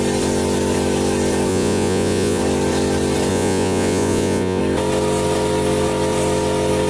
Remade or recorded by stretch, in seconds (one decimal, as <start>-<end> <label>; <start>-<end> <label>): 0.0-1.5 recorded; 1.5-2.4 remade; 2.4-3.3 recorded; 3.3-4.6 remade; 4.6-6.9 recorded